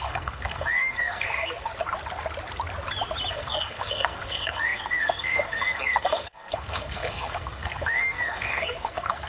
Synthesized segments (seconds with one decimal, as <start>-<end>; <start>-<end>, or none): 0.0-1.7; 3.3-9.3